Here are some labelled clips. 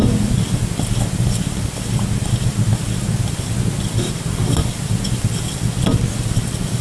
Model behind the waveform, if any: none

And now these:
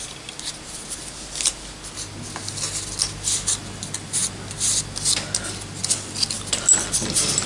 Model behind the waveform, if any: none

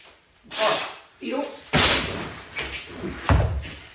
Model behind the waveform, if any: vocoder, BigVGAN v2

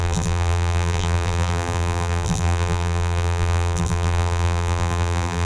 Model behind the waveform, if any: vocoder, BigVGAN v2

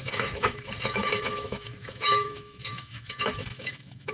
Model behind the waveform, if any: autoencoder, DAC-VAE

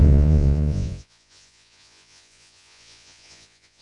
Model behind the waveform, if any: vocoder, Vocos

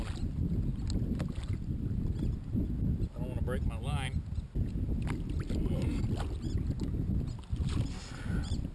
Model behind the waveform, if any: none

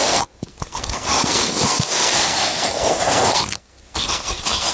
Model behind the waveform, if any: codec, SNAC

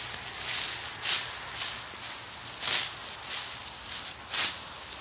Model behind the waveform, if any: none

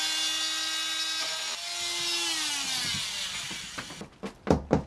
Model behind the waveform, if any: none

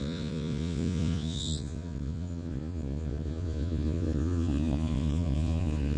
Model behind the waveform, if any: vocoder, Vocos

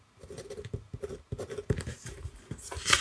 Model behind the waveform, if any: vocoder, BigVGAN v2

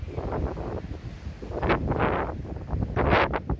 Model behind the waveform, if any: none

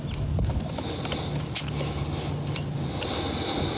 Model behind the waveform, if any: none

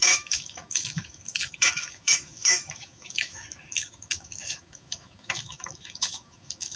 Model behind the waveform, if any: autoencoder, DAC-VAE